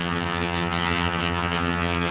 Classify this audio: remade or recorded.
remade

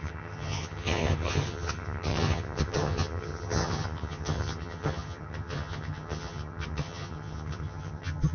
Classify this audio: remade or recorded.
remade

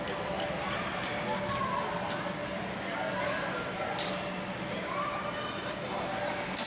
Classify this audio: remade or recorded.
recorded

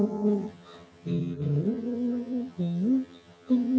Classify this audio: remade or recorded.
remade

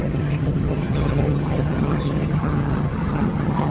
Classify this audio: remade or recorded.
remade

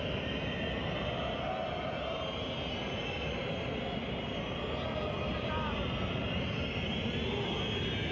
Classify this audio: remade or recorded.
recorded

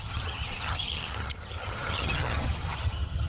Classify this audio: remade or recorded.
remade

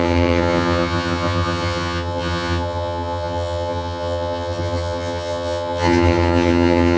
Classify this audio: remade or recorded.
remade